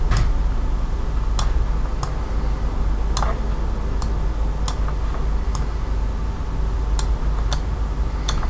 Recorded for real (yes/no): yes